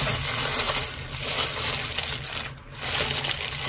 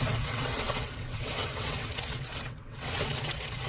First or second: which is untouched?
first